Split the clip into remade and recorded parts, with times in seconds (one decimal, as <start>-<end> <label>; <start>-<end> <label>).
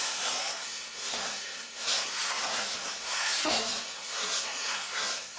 0.0-5.4 remade